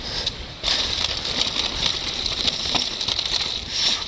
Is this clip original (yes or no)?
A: yes